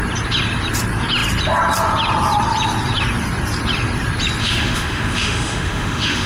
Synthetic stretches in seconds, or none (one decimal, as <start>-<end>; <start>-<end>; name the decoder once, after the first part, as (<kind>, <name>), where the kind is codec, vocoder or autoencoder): 4.4-6.3 (autoencoder, DAC-VAE)